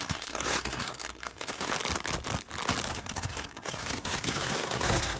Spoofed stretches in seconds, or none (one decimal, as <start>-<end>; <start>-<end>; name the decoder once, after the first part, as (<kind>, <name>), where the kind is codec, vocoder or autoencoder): 0.0-1.7 (codec, SNAC); 2.9-5.2